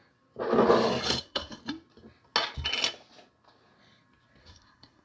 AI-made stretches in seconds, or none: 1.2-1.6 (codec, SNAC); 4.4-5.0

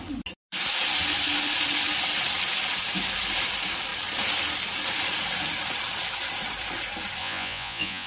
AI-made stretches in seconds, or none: 7.2-8.1 (vocoder, Vocos)

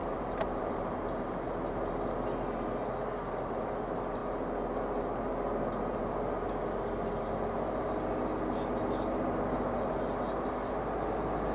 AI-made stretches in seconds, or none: 0.0-1.9 (vocoder, BigVGAN v2)

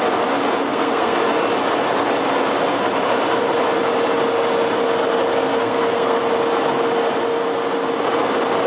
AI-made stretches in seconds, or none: 0.7-1.2 (codec, SNAC); 5.5-6.2

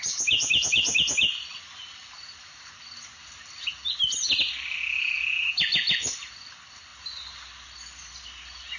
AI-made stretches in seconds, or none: none

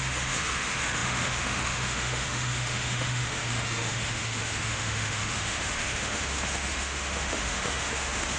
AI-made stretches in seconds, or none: 0.0-8.4 (autoencoder, DAC-VAE)

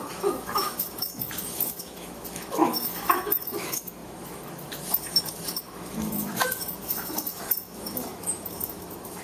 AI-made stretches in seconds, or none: 0.0-9.2 (autoencoder, DAC-VAE)